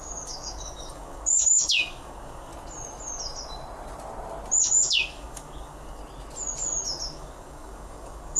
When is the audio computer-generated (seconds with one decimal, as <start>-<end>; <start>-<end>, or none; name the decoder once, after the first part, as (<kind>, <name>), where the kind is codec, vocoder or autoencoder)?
0.0-2.5 (codec, DAC); 4.6-6.0; 7.1-8.4